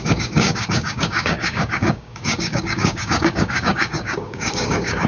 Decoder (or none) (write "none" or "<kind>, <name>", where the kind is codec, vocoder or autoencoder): codec, DAC